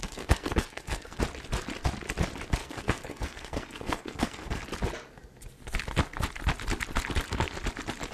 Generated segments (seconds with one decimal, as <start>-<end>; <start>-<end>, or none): 0.0-1.2; 2.6-4.6